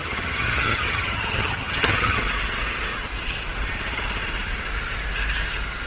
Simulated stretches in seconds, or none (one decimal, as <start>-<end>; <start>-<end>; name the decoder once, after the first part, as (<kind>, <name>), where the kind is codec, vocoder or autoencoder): 0.0-2.2 (vocoder, HiFi-GAN)